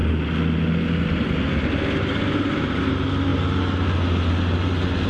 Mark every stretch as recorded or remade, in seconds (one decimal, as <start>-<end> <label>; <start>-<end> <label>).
0.0-5.1 recorded